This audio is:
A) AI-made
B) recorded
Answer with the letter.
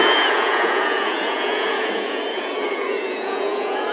A